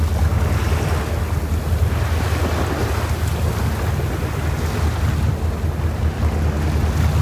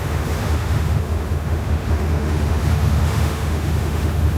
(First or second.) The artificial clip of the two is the second